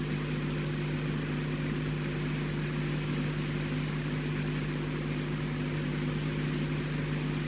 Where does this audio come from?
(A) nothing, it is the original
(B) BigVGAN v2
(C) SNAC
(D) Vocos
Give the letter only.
A